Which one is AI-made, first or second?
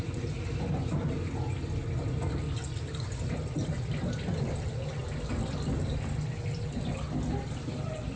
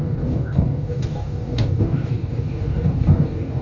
second